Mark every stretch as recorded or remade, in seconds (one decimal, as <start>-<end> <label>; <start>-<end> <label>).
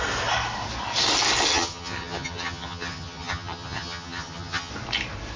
0.0-1.5 recorded; 1.5-4.7 remade; 4.7-5.4 recorded